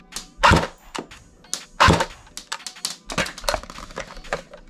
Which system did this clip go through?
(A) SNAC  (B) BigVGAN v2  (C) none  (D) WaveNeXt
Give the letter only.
C